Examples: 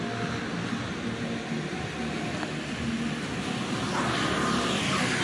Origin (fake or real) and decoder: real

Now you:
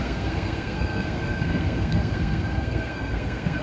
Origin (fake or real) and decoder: fake, codec, SNAC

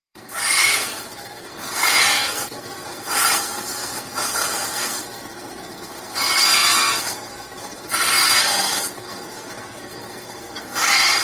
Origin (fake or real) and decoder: fake, codec, SNAC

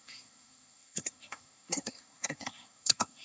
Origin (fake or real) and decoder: fake, codec, SNAC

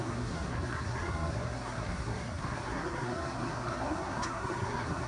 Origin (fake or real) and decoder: fake, codec, SNAC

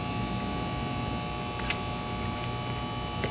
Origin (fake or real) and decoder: real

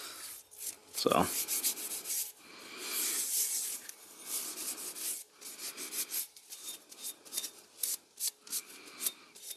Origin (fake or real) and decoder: real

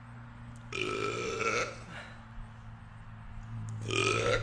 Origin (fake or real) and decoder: real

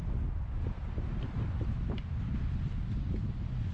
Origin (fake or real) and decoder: real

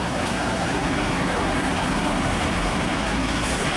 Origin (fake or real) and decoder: fake, codec, SNAC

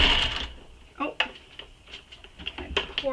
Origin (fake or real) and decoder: real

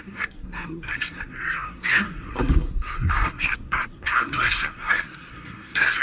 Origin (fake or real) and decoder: fake, codec, SNAC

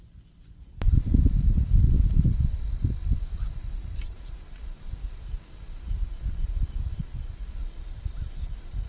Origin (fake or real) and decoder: real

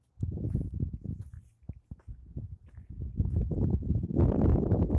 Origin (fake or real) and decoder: real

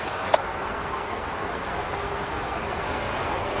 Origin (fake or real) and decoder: fake, codec, SNAC